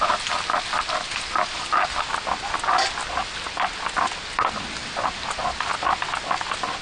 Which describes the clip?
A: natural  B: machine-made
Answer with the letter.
A